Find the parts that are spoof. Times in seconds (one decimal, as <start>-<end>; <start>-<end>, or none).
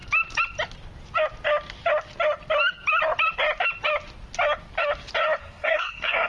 5.4-6.3